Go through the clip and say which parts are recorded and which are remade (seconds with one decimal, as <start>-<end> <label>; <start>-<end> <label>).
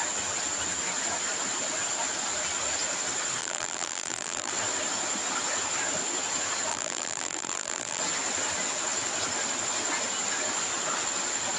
0.0-3.4 recorded; 3.4-4.5 remade; 4.5-6.7 recorded; 6.7-8.0 remade; 8.0-11.6 recorded